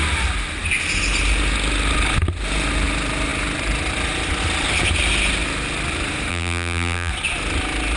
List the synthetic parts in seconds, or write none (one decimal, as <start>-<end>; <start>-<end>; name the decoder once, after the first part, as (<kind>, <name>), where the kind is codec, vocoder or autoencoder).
6.3-7.1 (vocoder, BigVGAN v2)